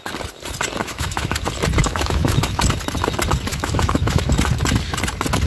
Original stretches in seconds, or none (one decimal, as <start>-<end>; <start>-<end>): 0.0-0.8; 1.3-1.8; 2.6-3.5; 4.3-5.5